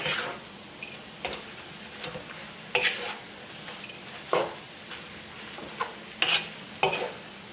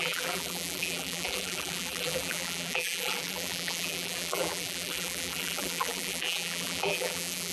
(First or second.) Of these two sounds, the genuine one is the first